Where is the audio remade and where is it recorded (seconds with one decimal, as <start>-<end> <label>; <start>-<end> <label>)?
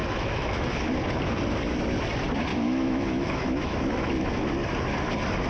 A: 0.0-0.7 remade; 0.7-2.5 recorded; 2.5-4.5 remade; 4.5-5.5 recorded